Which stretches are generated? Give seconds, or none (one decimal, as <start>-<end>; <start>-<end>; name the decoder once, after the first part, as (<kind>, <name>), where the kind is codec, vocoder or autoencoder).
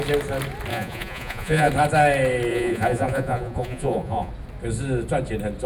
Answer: 0.7-1.7 (vocoder, Vocos); 2.5-4.3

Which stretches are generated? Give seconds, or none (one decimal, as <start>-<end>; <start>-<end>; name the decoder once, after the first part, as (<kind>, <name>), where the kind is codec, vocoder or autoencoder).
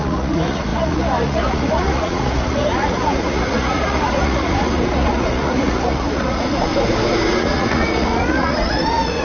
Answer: 0.0-6.7 (vocoder, Vocos); 7.4-9.2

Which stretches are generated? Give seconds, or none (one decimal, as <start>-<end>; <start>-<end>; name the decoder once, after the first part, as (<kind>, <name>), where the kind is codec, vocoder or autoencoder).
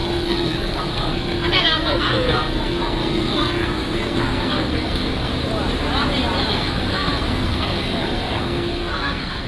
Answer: 0.0-5.3 (codec, SNAC); 6.5-9.5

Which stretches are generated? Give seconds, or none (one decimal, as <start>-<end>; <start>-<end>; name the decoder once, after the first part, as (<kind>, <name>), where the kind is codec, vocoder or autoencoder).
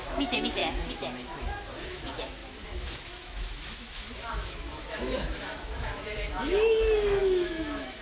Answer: 0.0-0.6 (autoencoder, DAC-VAE); 1.4-8.0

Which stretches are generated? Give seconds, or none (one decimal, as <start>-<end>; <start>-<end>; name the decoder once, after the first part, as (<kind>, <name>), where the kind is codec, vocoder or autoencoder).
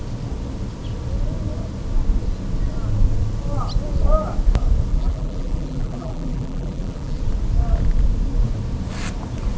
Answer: 4.9-7.2 (vocoder, BigVGAN v2)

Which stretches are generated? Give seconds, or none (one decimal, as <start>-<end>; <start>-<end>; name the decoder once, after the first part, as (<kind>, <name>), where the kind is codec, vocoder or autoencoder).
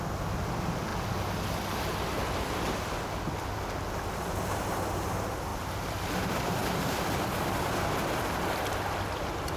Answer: 5.5-6.1 (vocoder, BigVGAN v2)